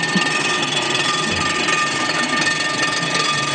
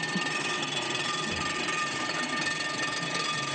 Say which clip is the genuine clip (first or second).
first